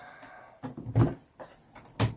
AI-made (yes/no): no